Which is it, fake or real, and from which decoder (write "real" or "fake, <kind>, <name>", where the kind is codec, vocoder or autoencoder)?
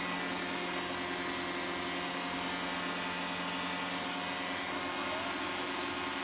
real